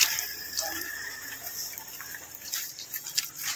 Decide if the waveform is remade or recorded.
remade